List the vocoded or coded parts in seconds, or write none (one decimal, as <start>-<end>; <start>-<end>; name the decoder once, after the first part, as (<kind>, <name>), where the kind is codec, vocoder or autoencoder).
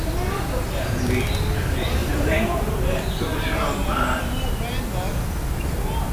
2.0-2.8 (vocoder, BigVGAN v2)